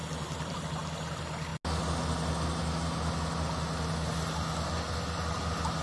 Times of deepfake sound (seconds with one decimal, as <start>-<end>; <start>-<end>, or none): 0.0-0.6